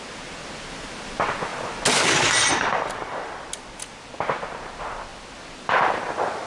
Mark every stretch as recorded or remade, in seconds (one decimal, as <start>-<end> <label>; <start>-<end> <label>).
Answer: 0.0-6.5 recorded